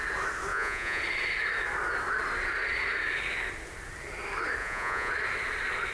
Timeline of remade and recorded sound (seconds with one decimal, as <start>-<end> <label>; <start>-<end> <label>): 0.0-0.5 recorded; 0.5-1.0 remade; 1.0-4.6 recorded; 4.6-5.1 remade; 5.1-5.9 recorded